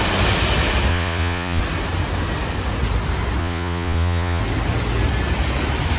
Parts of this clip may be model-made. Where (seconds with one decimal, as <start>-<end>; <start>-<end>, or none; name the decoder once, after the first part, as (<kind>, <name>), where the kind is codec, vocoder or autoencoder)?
0.9-1.6 (vocoder, Vocos); 3.4-4.4